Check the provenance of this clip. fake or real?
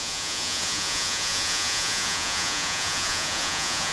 fake